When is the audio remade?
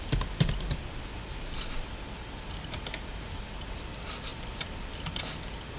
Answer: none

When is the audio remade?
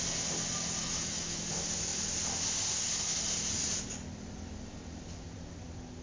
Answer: 0.8-1.4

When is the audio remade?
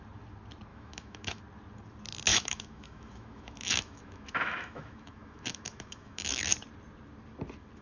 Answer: 0.7-1.4; 2.3-6.4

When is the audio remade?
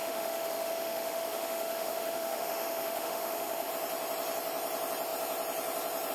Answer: 0.0-3.7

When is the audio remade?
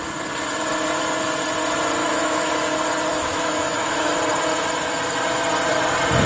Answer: 2.0-2.5; 3.1-4.1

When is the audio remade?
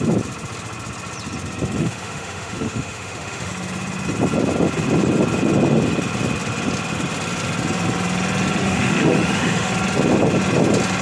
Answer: 1.8-3.5; 8.6-9.7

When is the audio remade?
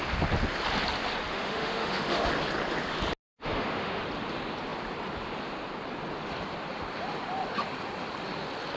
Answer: 1.3-2.3; 3.4-4.0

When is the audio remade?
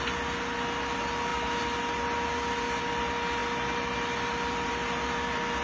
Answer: none